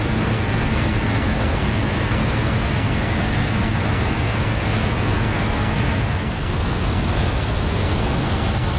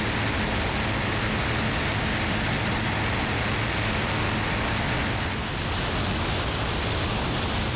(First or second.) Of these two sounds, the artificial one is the first